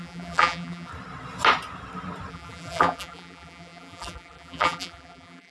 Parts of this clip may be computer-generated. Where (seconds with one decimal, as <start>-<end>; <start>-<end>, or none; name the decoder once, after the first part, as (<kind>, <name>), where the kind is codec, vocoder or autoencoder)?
0.0-0.9 (vocoder, BigVGAN v2); 2.3-5.5